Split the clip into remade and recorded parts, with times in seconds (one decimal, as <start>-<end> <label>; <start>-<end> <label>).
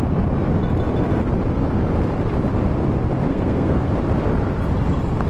0.0-3.3 recorded; 3.3-3.9 remade; 3.9-5.3 recorded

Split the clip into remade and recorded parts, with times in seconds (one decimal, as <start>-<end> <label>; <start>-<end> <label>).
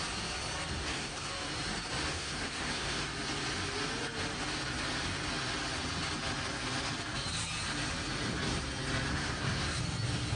0.0-0.8 recorded; 0.8-1.3 remade; 1.3-2.1 recorded; 2.1-3.0 remade; 3.0-9.1 recorded; 9.1-9.8 remade; 9.8-10.4 recorded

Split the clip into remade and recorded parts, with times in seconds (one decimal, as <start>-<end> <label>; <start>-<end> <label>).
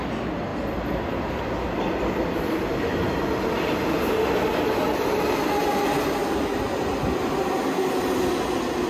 0.0-8.9 recorded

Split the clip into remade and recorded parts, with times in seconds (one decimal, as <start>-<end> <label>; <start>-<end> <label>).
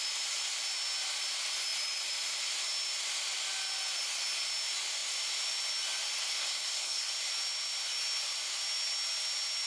0.0-6.2 recorded; 6.2-7.1 remade; 7.1-9.7 recorded